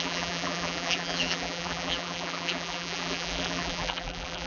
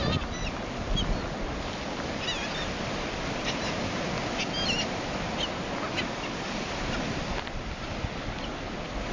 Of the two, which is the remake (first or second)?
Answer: first